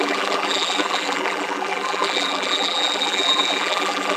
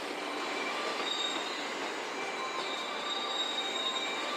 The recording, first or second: second